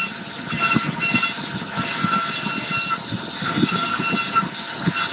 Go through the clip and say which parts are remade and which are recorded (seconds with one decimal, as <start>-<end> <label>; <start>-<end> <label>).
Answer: 0.0-3.4 recorded; 3.4-4.0 remade; 4.0-5.1 recorded